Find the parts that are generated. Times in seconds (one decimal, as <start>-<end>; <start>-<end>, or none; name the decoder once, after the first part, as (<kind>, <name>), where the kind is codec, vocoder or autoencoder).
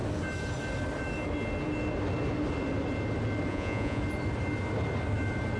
3.5-4.0 (vocoder, Vocos)